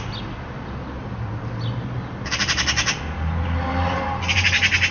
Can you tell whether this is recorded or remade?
recorded